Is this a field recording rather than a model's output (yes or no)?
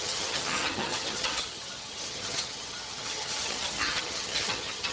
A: no